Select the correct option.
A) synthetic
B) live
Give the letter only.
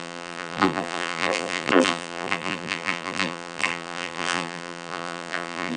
A